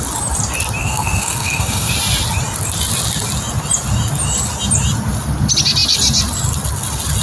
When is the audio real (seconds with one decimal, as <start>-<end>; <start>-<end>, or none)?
0.0-0.8; 1.9-7.2